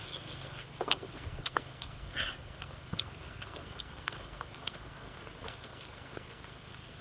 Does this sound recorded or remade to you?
remade